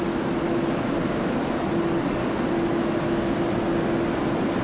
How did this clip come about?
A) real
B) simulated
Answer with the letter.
A